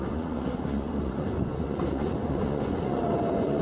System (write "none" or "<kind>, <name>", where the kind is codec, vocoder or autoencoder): vocoder, Vocos